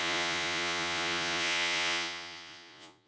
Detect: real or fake fake